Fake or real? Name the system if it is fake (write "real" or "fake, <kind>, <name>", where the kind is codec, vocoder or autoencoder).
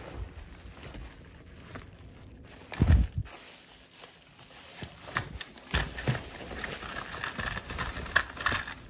real